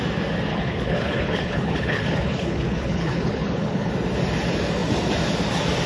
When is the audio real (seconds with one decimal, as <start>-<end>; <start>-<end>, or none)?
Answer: 0.0-0.5; 3.9-5.9